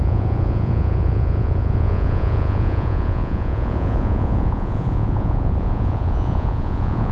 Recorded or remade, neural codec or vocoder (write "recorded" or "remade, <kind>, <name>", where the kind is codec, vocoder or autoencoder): remade, vocoder, Vocos